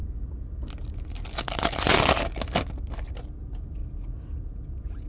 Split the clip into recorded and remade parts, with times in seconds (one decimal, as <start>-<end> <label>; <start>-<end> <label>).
0.0-3.1 recorded; 3.1-3.8 remade; 3.8-4.4 recorded; 4.4-5.1 remade